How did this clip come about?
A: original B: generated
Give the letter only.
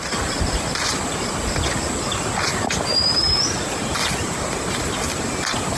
A